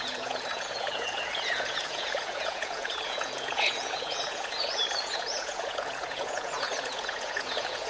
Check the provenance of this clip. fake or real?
fake